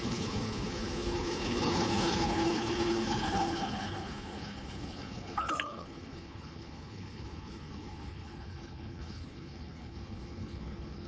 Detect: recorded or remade remade